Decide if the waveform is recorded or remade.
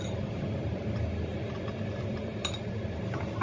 recorded